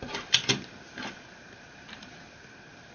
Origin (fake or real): real